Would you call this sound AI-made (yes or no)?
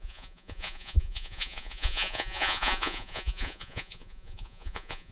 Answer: yes